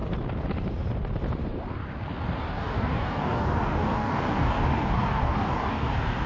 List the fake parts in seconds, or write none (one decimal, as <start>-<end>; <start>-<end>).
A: 2.4-6.3